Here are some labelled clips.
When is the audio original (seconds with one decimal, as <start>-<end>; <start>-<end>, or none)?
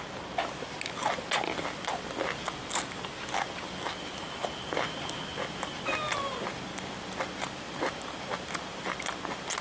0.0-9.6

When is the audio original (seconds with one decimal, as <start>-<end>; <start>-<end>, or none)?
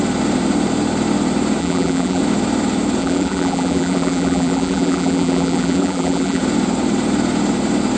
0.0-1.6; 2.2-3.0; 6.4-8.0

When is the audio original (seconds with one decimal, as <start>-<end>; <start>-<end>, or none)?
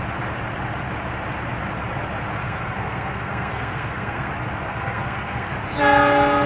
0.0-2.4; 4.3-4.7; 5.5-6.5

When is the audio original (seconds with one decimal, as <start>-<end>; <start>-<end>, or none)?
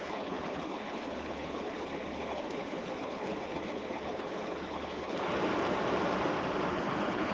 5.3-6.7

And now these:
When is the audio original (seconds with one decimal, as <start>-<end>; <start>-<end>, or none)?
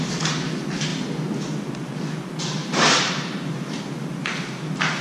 0.0-2.6; 3.8-5.0